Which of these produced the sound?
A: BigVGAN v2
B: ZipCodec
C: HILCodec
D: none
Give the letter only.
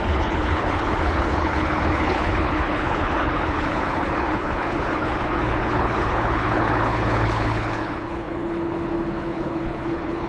C